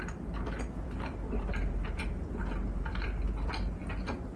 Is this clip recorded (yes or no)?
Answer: yes